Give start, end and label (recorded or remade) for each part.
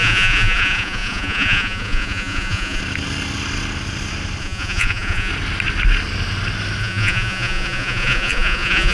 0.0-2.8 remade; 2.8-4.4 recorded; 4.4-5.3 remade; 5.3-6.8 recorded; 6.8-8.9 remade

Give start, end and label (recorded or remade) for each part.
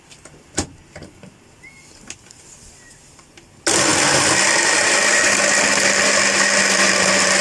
0.0-7.4 recorded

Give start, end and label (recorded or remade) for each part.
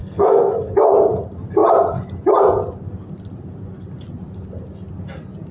0.0-0.5 remade; 0.5-5.5 recorded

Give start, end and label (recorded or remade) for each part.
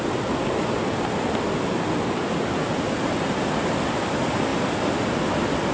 0.0-5.7 recorded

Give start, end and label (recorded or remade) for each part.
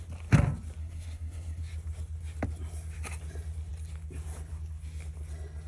0.0-0.8 recorded; 0.8-1.6 remade; 1.6-5.7 recorded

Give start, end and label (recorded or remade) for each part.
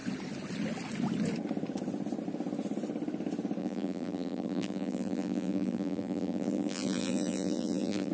0.0-3.6 recorded; 3.6-8.1 remade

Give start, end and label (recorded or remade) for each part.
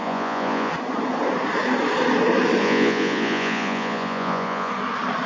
0.0-0.7 remade; 0.7-2.6 recorded; 2.6-4.7 remade; 4.7-5.3 recorded